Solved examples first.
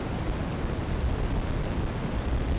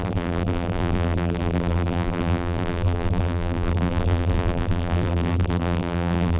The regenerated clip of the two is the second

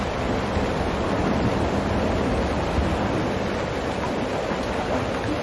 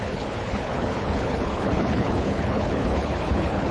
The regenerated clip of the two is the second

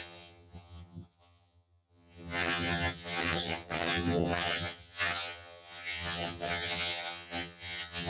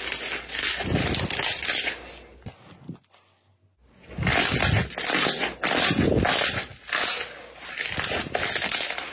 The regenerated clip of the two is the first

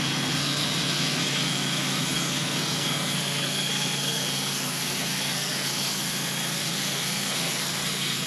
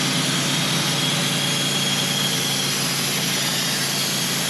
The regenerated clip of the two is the first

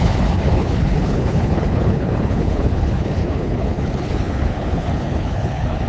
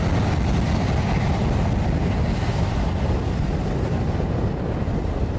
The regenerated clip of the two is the first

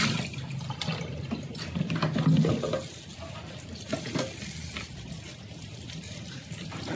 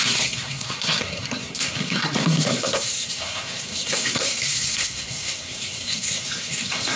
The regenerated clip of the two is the second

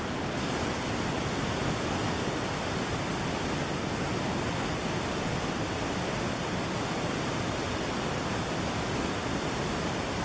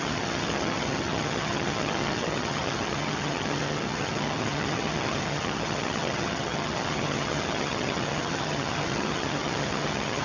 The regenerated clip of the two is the second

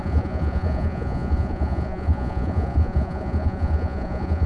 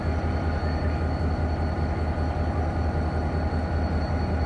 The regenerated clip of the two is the first